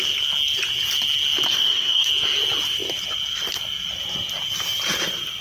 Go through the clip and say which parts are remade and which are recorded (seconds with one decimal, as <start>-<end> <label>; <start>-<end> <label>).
0.0-1.5 recorded; 1.5-2.1 remade; 2.1-5.4 recorded